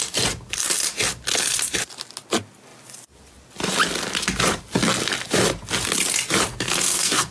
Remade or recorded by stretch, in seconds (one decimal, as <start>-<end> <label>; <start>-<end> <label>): 0.0-6.5 recorded; 6.5-7.3 remade